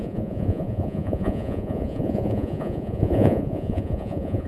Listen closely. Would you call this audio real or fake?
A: fake